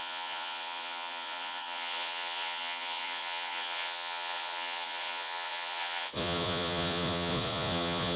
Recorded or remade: remade